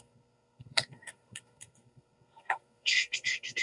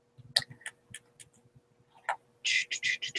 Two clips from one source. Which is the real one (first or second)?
second